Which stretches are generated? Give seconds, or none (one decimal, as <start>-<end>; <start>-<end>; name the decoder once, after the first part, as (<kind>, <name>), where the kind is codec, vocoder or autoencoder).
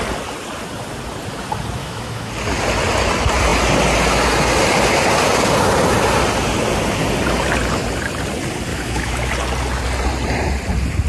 1.8-2.3 (autoencoder, DAC-VAE); 8.7-9.3